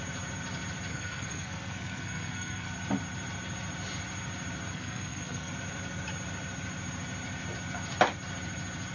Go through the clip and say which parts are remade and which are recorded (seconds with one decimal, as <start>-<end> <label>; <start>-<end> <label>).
0.0-0.9 recorded; 0.9-2.7 remade; 2.7-4.7 recorded; 4.7-5.5 remade; 5.5-8.9 recorded